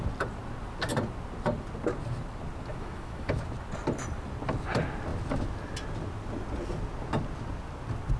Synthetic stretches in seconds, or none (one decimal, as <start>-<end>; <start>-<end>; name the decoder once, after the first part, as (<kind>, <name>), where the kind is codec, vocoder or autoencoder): 2.7-3.4 (autoencoder, DAC-VAE)